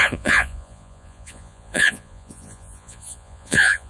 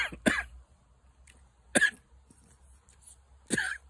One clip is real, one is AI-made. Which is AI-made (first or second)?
first